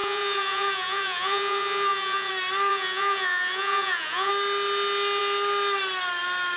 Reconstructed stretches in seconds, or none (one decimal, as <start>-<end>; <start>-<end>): 0.0-2.3; 2.7-4.3